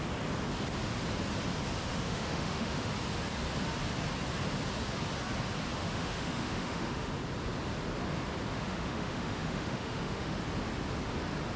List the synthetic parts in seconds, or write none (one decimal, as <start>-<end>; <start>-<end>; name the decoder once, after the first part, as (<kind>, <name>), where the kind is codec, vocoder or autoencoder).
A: 1.9-2.9 (autoencoder, DAC-VAE); 5.8-7.1; 8.5-10.4